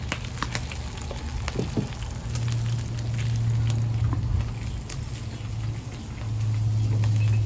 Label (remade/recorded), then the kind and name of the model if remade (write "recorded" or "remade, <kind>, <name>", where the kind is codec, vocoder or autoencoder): recorded